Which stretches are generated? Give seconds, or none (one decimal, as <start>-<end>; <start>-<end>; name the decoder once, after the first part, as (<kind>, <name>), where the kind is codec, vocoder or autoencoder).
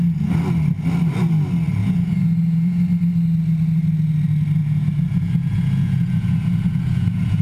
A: 1.8-2.8 (vocoder, Vocos); 4.6-7.4